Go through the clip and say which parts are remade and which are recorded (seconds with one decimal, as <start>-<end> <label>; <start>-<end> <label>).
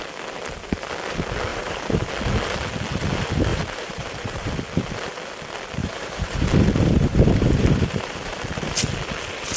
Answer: 0.0-1.5 recorded; 1.5-2.1 remade; 2.1-3.5 recorded; 3.5-4.5 remade; 4.5-5.8 recorded; 5.8-8.4 remade; 8.4-9.6 recorded